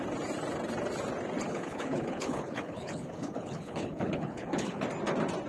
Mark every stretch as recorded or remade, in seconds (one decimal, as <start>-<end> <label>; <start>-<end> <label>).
0.0-1.5 recorded; 1.5-4.8 remade; 4.8-5.5 recorded